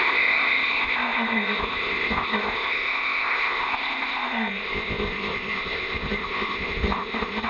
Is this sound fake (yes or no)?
yes